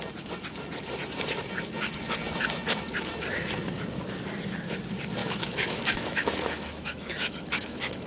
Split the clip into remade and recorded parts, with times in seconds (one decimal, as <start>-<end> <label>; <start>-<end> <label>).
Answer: 0.0-5.2 recorded; 5.2-8.1 remade